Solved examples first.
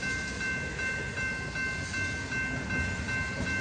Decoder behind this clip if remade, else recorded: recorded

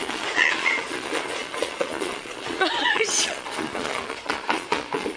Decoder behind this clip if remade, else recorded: remade, vocoder, Vocos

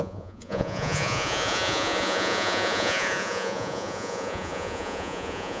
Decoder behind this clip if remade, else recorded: remade, vocoder, Vocos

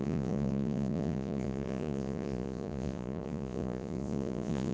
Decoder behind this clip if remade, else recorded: remade, vocoder, Vocos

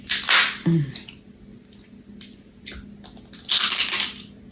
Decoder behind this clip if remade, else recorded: recorded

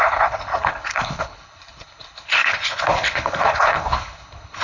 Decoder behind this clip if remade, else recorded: remade, codec, HILCodec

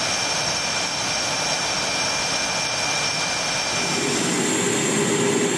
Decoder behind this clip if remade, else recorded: recorded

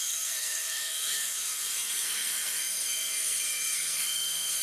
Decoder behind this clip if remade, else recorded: remade, codec, SNAC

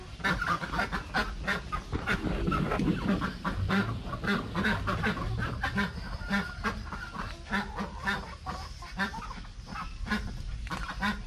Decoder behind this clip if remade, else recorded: recorded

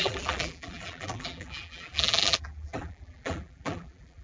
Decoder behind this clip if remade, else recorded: remade, vocoder, BigVGAN v2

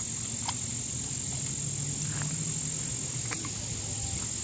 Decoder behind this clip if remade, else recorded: recorded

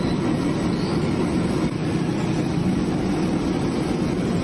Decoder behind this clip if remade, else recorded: recorded